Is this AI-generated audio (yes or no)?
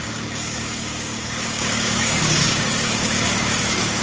yes